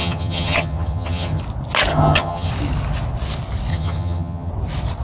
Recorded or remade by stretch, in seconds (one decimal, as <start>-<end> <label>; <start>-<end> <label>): 0.0-1.4 remade; 1.4-1.9 recorded; 1.9-2.5 remade; 2.5-3.7 recorded; 3.7-4.5 remade; 4.5-5.0 recorded